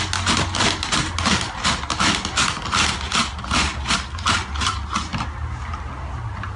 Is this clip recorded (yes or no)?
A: yes